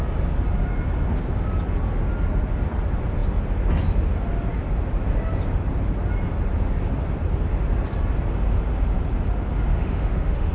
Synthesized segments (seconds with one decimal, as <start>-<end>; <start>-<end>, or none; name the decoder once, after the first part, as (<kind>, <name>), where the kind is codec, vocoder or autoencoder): 9.7-10.5 (autoencoder, DAC-VAE)